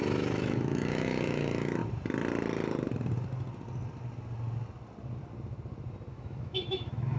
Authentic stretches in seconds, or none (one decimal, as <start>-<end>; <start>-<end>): 1.8-6.1